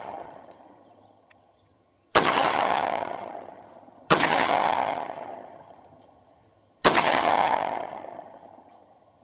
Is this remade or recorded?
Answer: remade